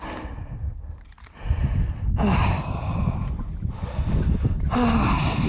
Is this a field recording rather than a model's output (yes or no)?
no